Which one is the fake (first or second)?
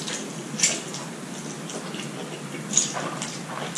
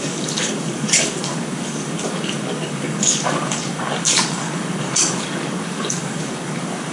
second